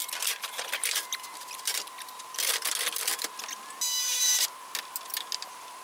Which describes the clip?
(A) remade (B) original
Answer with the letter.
B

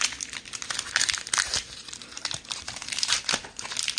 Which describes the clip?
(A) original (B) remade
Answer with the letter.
B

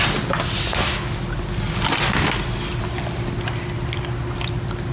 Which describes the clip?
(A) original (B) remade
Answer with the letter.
A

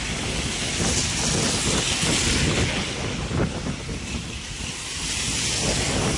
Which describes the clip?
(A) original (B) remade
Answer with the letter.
A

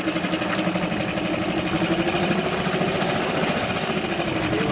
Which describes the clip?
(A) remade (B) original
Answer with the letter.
B